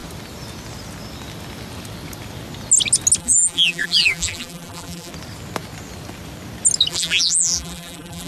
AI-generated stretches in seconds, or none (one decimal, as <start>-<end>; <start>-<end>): 3.2-5.1; 6.9-8.3